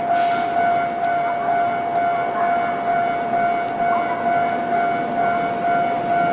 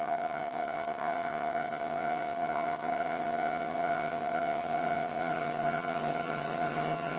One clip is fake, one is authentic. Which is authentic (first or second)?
first